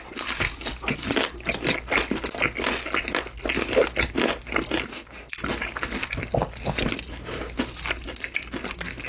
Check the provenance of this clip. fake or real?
real